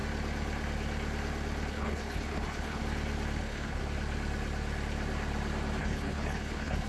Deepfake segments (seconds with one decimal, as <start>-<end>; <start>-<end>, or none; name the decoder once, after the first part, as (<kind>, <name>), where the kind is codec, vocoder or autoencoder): 1.7-2.8 (codec, HILCodec); 3.4-3.8; 5.8-6.9